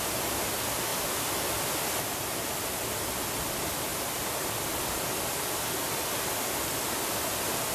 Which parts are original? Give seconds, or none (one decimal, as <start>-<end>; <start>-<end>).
0.0-7.7